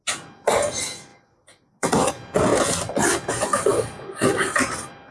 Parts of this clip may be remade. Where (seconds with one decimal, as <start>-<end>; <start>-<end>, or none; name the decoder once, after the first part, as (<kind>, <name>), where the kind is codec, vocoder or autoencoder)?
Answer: none